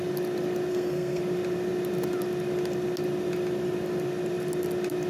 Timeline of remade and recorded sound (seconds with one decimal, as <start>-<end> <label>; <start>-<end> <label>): 0.0-0.7 recorded; 0.7-1.2 remade; 1.2-5.1 recorded